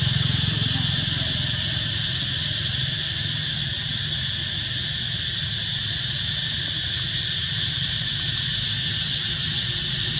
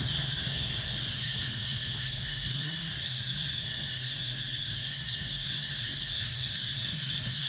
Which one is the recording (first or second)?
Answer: first